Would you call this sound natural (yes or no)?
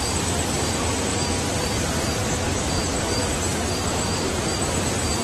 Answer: no